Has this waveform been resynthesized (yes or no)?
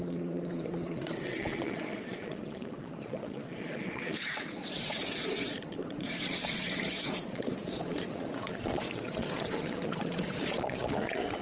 yes